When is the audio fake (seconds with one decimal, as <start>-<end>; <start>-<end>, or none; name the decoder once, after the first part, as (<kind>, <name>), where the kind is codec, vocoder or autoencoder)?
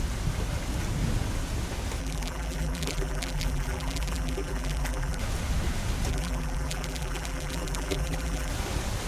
2.0-5.2 (vocoder, BigVGAN v2); 6.1-8.5